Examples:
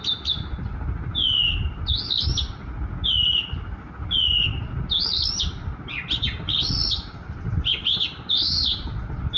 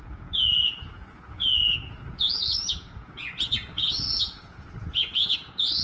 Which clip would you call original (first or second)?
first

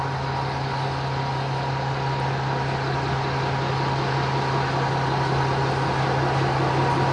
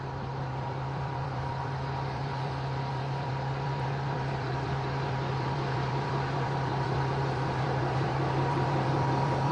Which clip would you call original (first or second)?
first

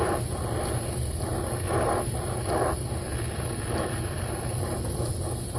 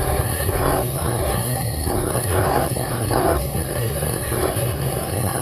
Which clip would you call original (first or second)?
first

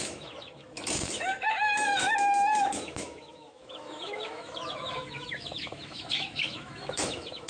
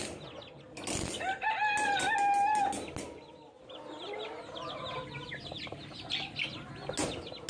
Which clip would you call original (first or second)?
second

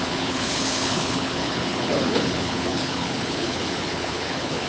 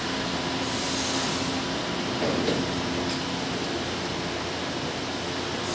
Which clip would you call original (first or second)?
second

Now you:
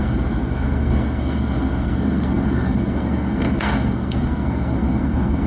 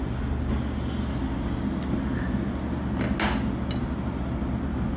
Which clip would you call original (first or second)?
second